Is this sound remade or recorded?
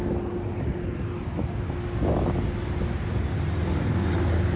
recorded